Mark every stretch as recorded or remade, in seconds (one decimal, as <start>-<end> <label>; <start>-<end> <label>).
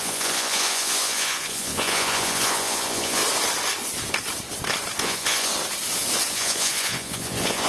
0.0-3.2 remade; 3.2-5.0 recorded; 5.0-5.5 remade; 5.5-6.3 recorded; 6.3-7.7 remade